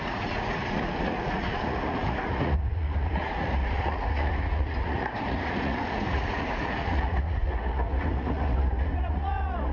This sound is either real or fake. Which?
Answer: fake